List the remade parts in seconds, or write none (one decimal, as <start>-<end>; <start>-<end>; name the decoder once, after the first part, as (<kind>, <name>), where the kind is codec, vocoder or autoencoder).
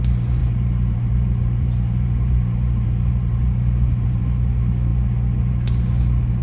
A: 0.4-4.2 (vocoder, BigVGAN v2)